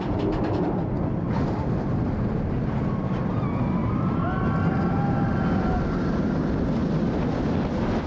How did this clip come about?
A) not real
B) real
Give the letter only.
B